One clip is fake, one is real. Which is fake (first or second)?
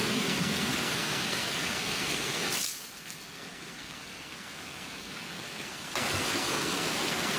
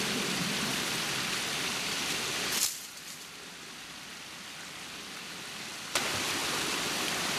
first